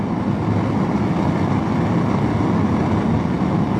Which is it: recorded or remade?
recorded